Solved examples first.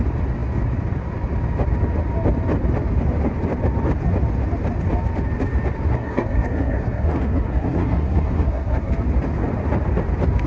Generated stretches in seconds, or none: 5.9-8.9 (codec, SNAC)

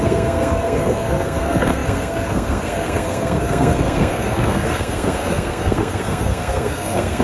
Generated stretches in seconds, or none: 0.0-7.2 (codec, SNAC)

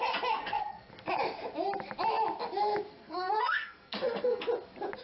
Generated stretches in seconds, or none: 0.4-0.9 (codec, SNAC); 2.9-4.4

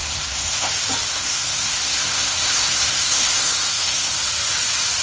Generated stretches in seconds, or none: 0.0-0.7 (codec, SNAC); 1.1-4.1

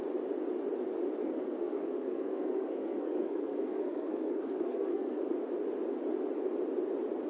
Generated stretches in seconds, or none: 1.2-5.3 (codec, SNAC)